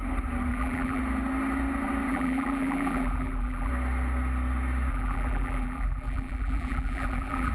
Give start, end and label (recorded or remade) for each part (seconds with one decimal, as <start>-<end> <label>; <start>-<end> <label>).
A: 0.0-0.5 recorded; 0.5-1.0 remade; 1.0-2.1 recorded; 2.1-3.7 remade; 3.7-4.9 recorded; 4.9-7.5 remade